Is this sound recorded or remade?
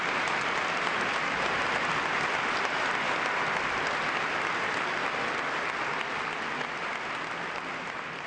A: recorded